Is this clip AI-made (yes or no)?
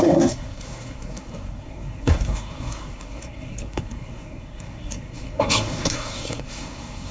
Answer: yes